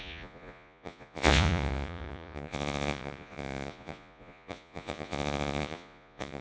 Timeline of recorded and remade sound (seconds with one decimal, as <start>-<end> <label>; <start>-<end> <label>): 0.0-6.4 remade